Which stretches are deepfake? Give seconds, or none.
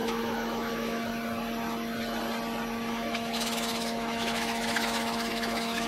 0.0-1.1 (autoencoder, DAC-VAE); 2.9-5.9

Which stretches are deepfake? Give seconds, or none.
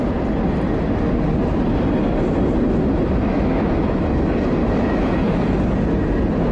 3.3-4.0 (autoencoder, DAC-VAE); 4.6-5.4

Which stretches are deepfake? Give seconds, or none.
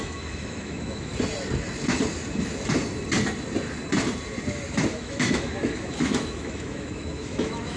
0.0-1.1 (autoencoder, DAC-VAE); 4.9-7.8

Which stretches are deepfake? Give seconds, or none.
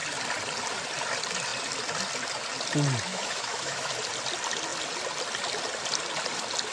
3.1-3.9 (autoencoder, DAC-VAE)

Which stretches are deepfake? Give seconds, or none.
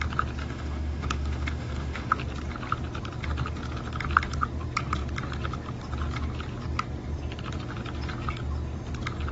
0.4-2.1 (autoencoder, DAC-VAE)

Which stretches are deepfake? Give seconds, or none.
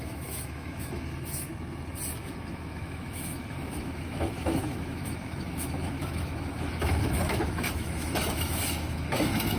0.0-1.5 (autoencoder, DAC-VAE); 2.2-9.6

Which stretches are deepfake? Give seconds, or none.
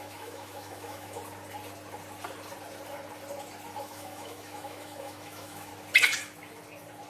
0.0-1.2 (autoencoder, DAC-VAE); 3.8-5.7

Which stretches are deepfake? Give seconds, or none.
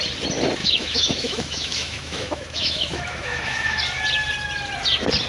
0.6-3.8 (autoencoder, DAC-VAE)